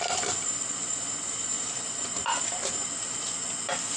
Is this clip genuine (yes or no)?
yes